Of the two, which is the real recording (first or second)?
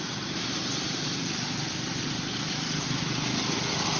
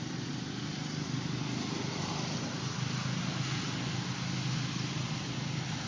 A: second